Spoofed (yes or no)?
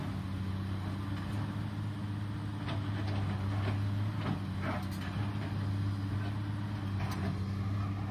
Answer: no